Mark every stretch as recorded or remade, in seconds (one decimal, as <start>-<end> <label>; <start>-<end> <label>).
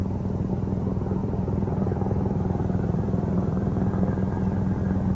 0.0-1.2 recorded; 1.2-3.9 remade; 3.9-5.1 recorded